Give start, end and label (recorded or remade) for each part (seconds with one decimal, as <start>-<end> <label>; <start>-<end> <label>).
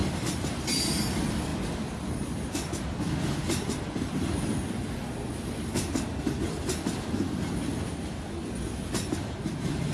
0.0-9.9 recorded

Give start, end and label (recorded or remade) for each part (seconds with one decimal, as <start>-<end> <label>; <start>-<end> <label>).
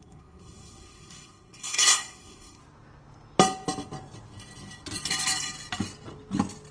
0.0-2.6 remade; 2.6-6.7 recorded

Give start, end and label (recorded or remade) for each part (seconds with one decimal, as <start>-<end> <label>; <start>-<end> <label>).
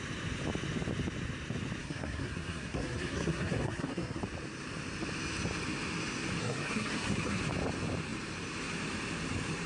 0.0-1.8 recorded; 1.8-4.2 remade; 4.2-6.4 recorded; 6.4-7.4 remade; 7.4-9.7 recorded